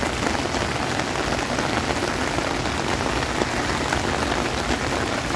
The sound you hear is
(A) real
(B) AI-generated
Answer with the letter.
A